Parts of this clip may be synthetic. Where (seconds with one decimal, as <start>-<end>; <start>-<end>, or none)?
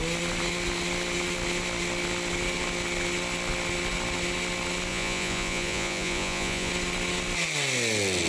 4.9-6.7